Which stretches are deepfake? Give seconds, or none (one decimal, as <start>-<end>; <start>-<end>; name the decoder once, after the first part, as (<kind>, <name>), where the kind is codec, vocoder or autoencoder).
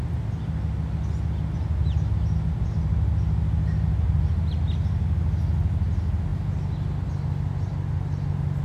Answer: none